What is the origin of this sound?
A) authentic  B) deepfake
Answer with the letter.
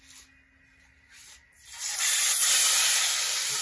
A